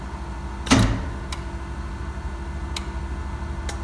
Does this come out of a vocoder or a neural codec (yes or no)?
no